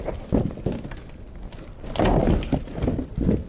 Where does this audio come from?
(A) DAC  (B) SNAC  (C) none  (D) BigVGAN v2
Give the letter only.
C